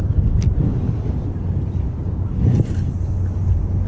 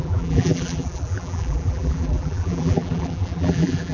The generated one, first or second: second